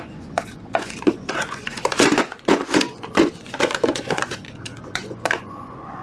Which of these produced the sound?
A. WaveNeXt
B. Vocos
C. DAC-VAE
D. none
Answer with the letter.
B